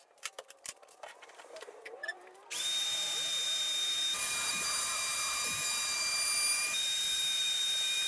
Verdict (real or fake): fake